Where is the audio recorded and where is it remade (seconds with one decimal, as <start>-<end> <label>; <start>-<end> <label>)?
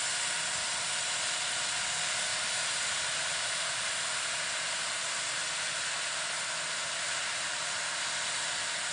0.0-2.3 recorded; 2.3-3.8 remade; 3.8-8.9 recorded